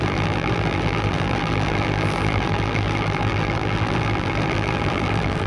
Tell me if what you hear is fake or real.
fake